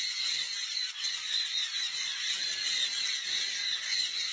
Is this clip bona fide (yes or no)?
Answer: yes